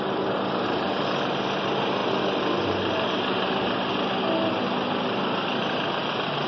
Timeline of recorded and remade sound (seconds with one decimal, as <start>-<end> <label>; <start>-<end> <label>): 0.0-6.5 recorded